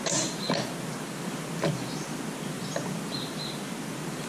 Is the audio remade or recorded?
recorded